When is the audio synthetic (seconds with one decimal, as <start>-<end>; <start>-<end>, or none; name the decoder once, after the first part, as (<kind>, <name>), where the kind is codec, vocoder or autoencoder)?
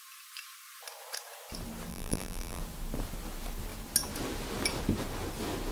1.9-2.6 (vocoder, BigVGAN v2)